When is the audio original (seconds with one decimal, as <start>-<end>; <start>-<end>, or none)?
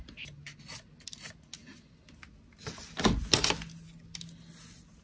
0.0-5.0